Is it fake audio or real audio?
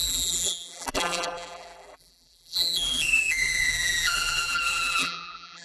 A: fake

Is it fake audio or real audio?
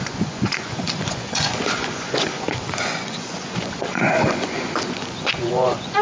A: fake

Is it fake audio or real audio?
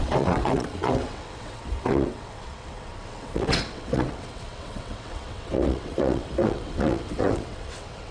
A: fake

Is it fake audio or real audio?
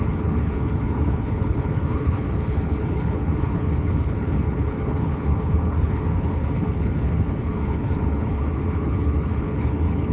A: fake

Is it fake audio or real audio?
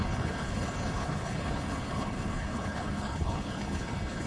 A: fake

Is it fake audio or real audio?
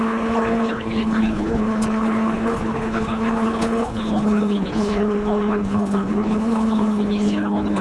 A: fake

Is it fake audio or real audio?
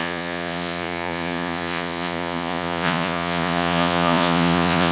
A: fake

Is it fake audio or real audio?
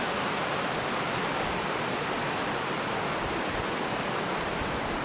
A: real